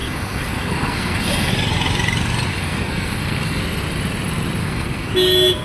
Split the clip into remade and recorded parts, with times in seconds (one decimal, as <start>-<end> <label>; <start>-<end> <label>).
0.0-1.5 remade; 1.5-2.5 recorded; 2.5-3.6 remade; 3.6-4.6 recorded; 4.6-5.1 remade; 5.1-5.6 recorded